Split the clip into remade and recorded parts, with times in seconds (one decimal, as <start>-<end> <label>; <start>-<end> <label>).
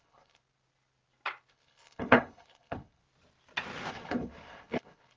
0.0-0.4 remade; 0.4-1.5 recorded; 1.5-3.0 remade; 3.0-3.9 recorded; 3.9-5.2 remade